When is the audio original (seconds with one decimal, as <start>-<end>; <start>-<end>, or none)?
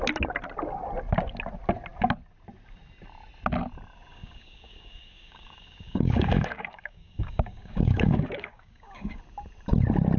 0.0-4.1; 9.2-10.2